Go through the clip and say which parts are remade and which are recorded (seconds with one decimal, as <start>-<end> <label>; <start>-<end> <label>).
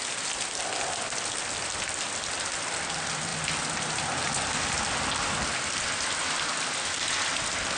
0.0-7.8 recorded